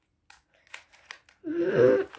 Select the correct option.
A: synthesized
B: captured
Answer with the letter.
B